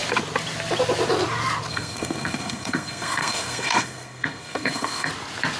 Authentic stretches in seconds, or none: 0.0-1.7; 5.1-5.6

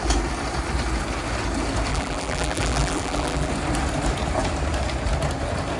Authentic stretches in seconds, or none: 0.0-1.9; 3.5-5.8

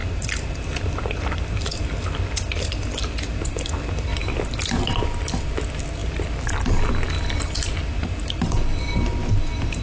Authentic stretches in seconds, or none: 1.9-6.0; 6.9-9.8

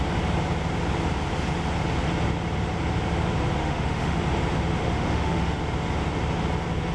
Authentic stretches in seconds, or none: 0.0-3.6; 4.2-4.8; 5.6-6.9